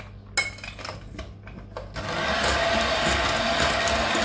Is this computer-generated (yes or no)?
no